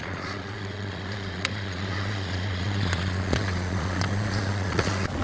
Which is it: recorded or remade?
remade